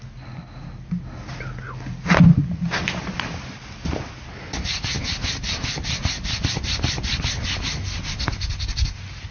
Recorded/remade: recorded